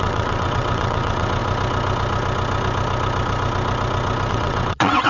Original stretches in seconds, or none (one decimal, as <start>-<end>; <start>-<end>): 1.4-4.3